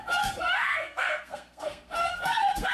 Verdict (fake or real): fake